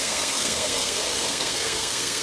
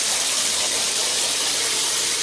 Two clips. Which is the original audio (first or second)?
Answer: second